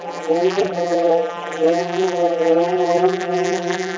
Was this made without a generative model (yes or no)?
no